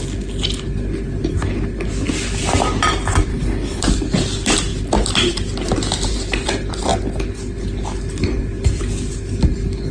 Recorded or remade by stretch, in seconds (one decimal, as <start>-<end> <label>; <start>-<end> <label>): 0.0-3.3 recorded; 3.3-3.8 remade; 3.8-9.9 recorded